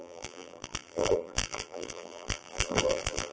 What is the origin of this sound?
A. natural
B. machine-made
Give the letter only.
B